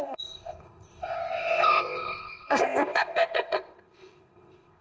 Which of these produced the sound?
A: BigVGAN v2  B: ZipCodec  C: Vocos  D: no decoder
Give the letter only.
B